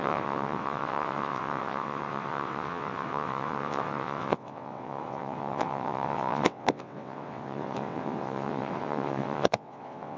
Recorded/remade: remade